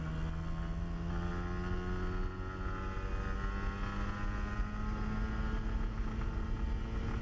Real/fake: real